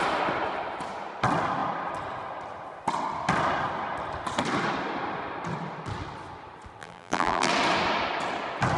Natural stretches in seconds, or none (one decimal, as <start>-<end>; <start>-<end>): 0.0-6.8; 7.5-8.8

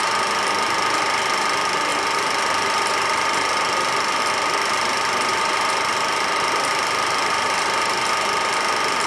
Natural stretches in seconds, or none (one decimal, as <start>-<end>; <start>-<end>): 0.0-1.9; 4.2-5.3; 6.7-9.1

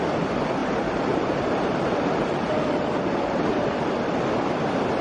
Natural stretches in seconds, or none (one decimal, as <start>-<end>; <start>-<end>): 0.0-0.6; 3.6-5.0

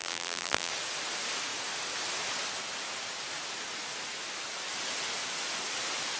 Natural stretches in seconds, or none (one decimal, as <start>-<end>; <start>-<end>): 0.7-6.2

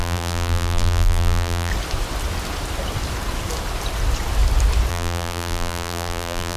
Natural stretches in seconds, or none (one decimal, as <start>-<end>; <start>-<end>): 1.7-4.9

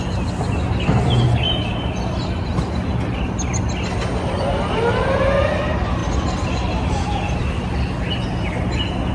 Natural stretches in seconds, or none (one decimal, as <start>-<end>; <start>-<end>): 0.0-9.1